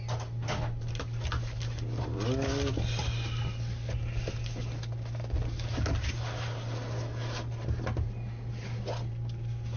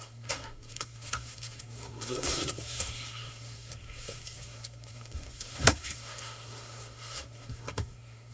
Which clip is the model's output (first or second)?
second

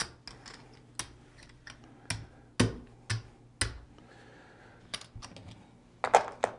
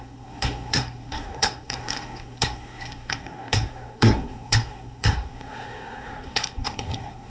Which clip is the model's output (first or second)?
second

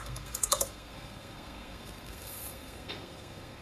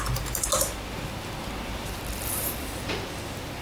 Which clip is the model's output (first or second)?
first